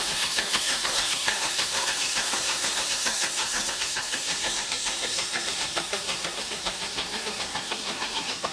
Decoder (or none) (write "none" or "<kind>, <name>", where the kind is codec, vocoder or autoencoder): codec, SNAC